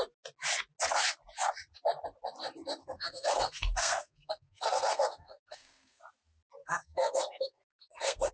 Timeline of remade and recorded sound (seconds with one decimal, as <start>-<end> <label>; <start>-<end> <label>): 0.0-2.8 recorded; 2.8-6.0 remade; 6.0-6.6 recorded; 6.6-8.3 remade